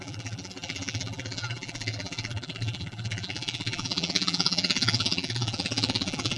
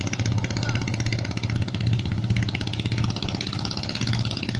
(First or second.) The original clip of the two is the second